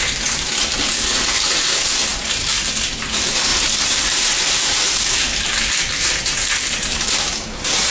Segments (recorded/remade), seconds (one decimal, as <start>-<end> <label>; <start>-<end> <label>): 0.0-2.1 recorded; 2.1-3.0 remade; 3.0-3.5 recorded; 3.5-7.1 remade; 7.1-7.9 recorded